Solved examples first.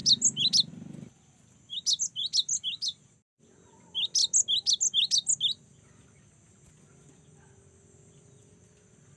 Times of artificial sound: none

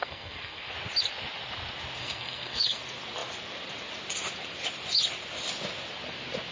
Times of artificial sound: 0.0-0.7; 2.0-2.8